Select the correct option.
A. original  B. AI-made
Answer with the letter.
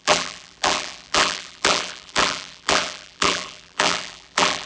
B